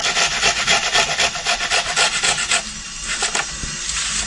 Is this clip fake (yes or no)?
no